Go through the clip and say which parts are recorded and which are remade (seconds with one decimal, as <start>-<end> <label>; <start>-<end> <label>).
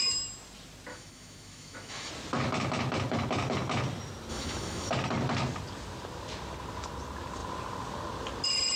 0.0-0.9 recorded; 0.9-2.1 remade; 2.1-4.3 recorded; 4.3-4.9 remade; 4.9-8.8 recorded